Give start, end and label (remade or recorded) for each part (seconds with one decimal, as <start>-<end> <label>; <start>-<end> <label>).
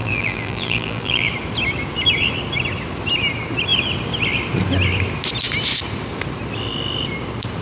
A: 0.0-1.3 remade; 1.3-7.6 recorded